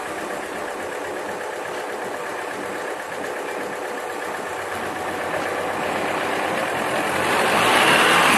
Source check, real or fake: real